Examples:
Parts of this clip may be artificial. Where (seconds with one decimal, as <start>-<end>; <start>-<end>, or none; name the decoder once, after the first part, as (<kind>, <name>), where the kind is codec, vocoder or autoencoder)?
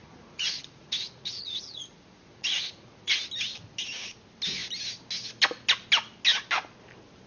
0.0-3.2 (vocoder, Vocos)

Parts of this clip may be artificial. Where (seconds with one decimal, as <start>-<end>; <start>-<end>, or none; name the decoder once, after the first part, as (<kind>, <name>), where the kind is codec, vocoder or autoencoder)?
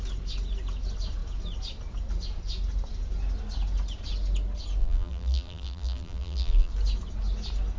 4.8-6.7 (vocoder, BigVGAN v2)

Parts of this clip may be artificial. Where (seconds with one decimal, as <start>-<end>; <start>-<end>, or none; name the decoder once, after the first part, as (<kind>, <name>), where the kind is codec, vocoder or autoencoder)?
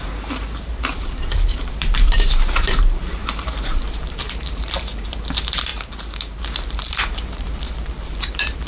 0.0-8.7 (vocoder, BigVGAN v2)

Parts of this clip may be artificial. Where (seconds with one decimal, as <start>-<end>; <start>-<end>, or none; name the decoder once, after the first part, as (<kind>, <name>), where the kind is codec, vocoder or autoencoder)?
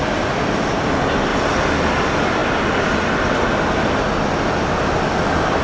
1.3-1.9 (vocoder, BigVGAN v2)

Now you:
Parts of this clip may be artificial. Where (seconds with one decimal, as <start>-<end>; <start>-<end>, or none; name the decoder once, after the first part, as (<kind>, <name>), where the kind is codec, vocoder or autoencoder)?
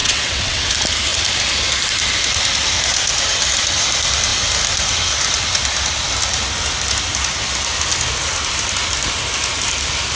0.0-0.7 (vocoder, WaveNeXt)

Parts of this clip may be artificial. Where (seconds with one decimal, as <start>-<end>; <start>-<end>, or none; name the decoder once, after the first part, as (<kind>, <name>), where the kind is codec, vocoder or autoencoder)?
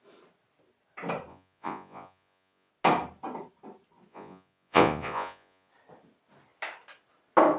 1.3-2.7 (vocoder, Vocos); 4.1-5.7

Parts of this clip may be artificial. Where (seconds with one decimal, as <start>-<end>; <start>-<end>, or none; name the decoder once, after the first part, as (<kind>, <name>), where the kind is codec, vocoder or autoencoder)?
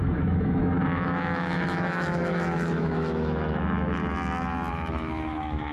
0.0-4.0 (autoencoder, DAC-VAE); 4.7-5.7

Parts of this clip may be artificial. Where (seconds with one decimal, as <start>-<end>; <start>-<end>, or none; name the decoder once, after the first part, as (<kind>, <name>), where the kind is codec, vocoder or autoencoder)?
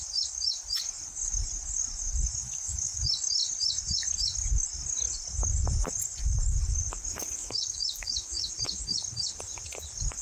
2.4-3.0 (autoencoder, DAC-VAE); 7.4-8.5